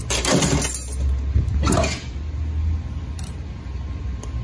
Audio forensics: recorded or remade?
recorded